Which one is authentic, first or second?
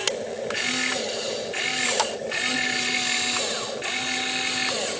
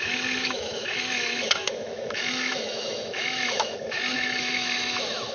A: first